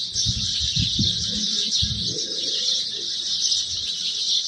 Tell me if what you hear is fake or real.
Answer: real